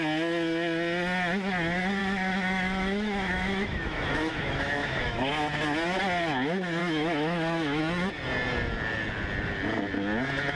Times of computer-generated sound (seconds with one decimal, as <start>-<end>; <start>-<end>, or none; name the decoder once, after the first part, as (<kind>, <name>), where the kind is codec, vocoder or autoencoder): 2.0-5.3 (autoencoder, DAC-VAE); 6.8-7.8

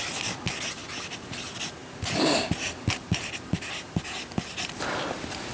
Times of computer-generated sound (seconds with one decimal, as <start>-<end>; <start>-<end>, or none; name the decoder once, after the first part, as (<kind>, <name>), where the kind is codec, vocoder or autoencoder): none

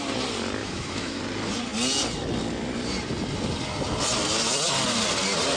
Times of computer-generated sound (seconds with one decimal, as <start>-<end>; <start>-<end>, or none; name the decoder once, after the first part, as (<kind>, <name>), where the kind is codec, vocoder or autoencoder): 0.6-1.2 (autoencoder, DAC-VAE)

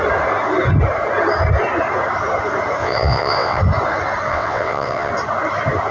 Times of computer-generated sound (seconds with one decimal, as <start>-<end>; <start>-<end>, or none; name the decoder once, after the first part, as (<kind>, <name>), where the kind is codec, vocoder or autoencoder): 2.8-3.6 (vocoder, WaveNeXt); 4.3-5.1

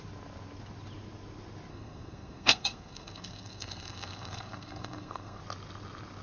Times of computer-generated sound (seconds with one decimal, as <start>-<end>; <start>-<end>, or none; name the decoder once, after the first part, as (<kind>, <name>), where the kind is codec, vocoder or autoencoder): 1.7-5.4 (codec, SNAC)

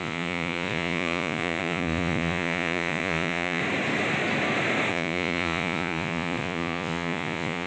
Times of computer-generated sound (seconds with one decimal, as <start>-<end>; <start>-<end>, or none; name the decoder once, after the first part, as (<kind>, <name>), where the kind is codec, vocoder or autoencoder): 0.0-3.6 (vocoder, Vocos); 4.9-7.7